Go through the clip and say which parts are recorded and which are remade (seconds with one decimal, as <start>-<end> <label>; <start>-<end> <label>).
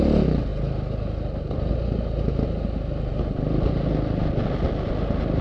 0.0-5.4 recorded